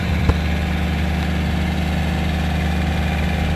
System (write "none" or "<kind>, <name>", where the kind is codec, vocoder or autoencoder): none